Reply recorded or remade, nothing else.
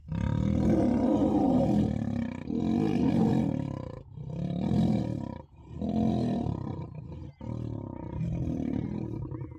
recorded